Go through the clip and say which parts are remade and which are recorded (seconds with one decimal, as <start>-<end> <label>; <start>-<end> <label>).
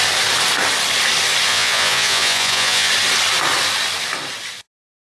0.0-1.5 recorded; 1.5-2.9 remade; 2.9-5.0 recorded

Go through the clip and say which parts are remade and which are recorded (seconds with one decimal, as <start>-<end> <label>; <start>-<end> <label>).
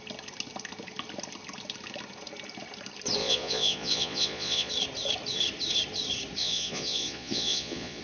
0.0-3.2 recorded; 3.2-4.7 remade; 4.7-6.4 recorded; 6.4-8.0 remade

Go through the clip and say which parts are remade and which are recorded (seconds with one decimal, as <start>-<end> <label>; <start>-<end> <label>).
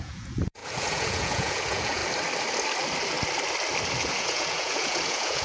0.0-2.0 remade; 2.0-4.0 recorded; 4.0-5.4 remade